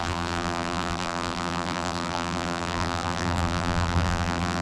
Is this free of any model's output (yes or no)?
no